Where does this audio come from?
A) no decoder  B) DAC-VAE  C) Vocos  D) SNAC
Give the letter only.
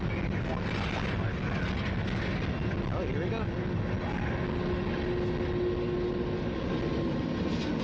A